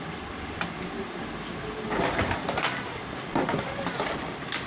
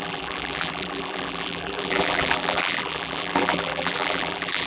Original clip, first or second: first